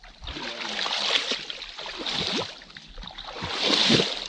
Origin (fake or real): real